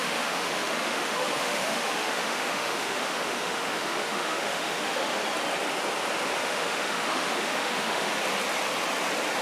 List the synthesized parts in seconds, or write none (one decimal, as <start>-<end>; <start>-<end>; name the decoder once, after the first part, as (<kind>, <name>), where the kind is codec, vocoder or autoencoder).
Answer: 0.0-5.1 (autoencoder, DAC-VAE); 6.4-8.1

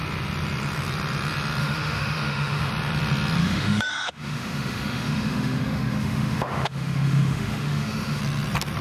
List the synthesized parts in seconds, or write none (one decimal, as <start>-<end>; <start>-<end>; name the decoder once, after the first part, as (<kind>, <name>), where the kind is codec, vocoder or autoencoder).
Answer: 1.6-2.7 (autoencoder, DAC-VAE); 3.4-8.2

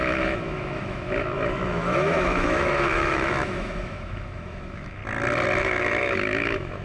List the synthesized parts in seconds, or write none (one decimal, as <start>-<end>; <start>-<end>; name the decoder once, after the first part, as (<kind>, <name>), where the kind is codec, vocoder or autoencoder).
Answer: 0.0-5.0 (autoencoder, DAC-VAE); 5.6-6.8

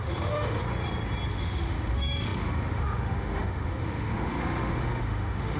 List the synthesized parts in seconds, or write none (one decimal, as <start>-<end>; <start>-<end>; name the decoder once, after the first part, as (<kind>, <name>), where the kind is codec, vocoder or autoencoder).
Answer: 0.0-0.6 (autoencoder, DAC-VAE); 1.3-5.6